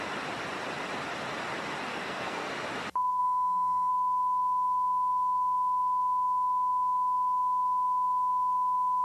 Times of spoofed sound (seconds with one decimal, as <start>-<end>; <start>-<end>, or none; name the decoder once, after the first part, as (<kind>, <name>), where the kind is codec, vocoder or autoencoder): 1.9-2.5 (codec, SNAC); 3.2-3.9